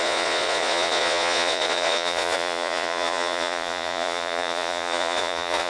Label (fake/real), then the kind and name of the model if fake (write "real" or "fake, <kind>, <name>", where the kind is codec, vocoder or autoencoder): fake, vocoder, Vocos